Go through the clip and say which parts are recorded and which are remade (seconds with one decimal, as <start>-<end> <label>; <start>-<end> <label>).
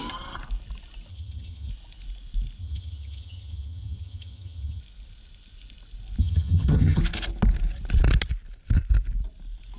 0.0-1.1 recorded; 1.1-1.7 remade; 1.7-2.6 recorded; 2.6-4.8 remade; 4.8-6.2 recorded; 6.2-7.0 remade; 7.0-9.8 recorded